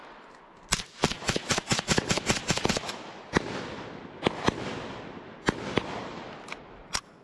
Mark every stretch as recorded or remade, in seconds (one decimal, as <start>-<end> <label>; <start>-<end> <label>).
0.0-0.8 recorded; 0.8-7.2 remade